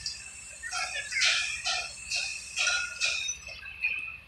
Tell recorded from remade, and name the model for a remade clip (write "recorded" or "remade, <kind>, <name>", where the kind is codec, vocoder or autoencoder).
recorded